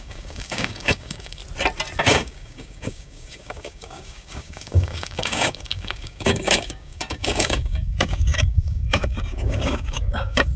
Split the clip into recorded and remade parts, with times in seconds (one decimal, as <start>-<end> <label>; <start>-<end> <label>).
0.0-1.4 remade; 1.4-2.0 recorded; 2.0-10.6 remade